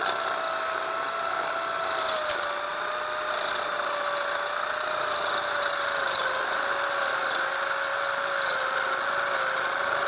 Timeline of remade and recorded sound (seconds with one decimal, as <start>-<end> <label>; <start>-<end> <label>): 0.0-10.1 recorded